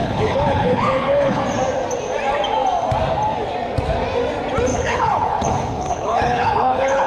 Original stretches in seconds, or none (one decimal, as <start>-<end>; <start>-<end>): 1.4-4.7